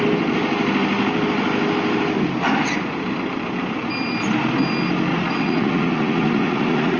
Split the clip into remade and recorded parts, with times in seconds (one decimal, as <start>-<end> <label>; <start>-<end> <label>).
0.0-5.1 recorded; 5.1-7.0 remade